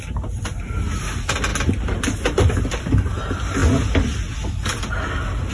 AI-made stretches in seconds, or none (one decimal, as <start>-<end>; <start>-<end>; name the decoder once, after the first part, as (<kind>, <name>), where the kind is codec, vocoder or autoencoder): none